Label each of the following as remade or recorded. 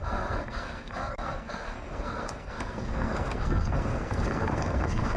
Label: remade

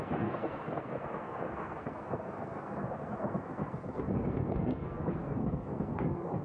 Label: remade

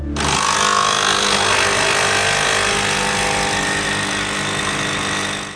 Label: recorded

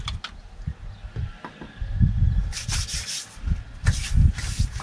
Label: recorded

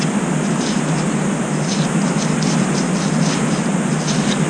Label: recorded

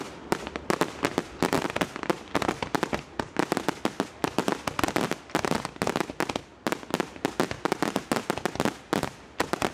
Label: recorded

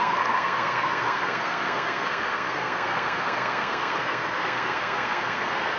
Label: remade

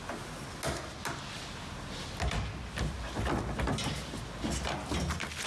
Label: recorded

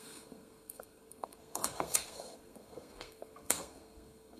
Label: remade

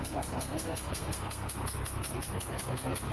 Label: remade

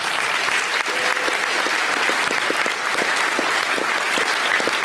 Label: recorded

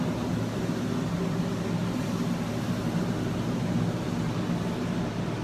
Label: recorded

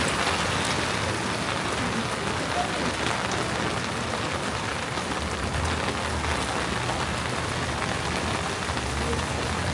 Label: recorded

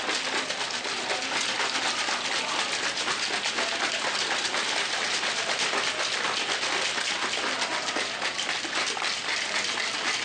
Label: recorded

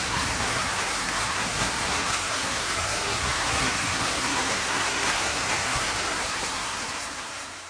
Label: remade